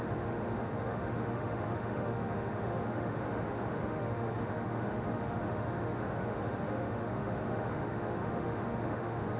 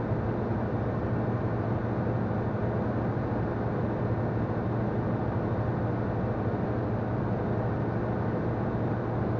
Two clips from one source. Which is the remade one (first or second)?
first